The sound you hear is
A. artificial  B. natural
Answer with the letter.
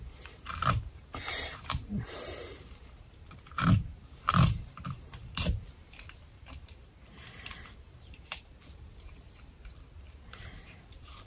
A